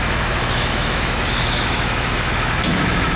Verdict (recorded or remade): remade